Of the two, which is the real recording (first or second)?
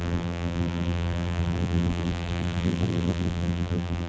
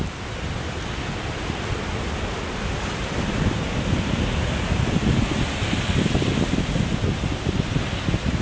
second